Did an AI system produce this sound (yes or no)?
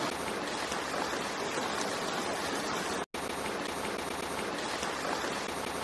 no